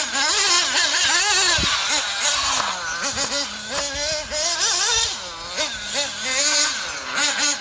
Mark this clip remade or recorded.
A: recorded